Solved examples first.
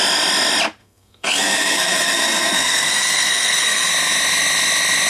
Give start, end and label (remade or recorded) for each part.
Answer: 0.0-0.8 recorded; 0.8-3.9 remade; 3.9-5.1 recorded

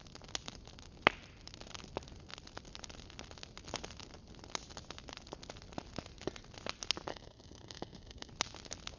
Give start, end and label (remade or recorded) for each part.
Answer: 0.0-7.1 recorded; 7.1-8.3 remade; 8.3-9.0 recorded

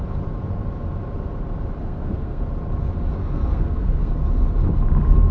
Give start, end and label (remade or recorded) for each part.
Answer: 0.0-1.8 recorded; 1.8-2.4 remade; 2.4-3.2 recorded; 3.2-4.1 remade; 4.1-5.3 recorded

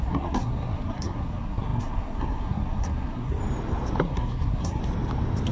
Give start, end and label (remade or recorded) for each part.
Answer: 0.0-3.4 remade; 3.4-4.0 recorded; 4.0-4.8 remade; 4.8-5.5 recorded

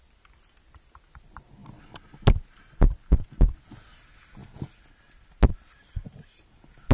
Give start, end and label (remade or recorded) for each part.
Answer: 0.0-6.9 recorded

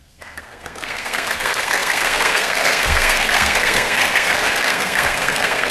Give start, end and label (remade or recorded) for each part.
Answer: 0.0-5.7 remade

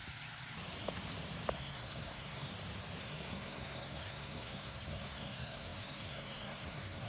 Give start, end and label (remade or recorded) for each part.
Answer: 0.0-1.5 recorded; 1.5-2.5 remade; 2.5-3.0 recorded; 3.0-7.1 remade